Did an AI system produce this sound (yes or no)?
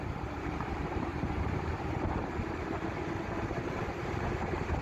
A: yes